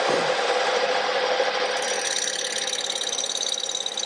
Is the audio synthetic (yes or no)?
no